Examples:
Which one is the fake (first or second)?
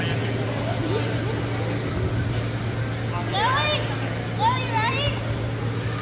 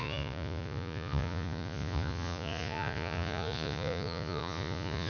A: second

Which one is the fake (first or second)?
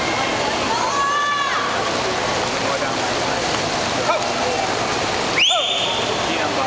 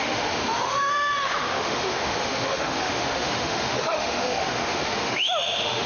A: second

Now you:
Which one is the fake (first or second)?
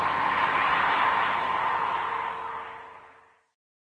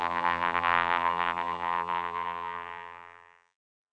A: second